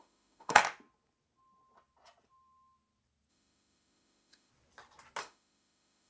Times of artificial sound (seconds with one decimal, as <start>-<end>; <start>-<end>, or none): 0.0-0.6; 3.3-4.5; 5.2-6.1